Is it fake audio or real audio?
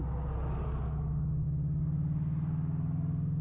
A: real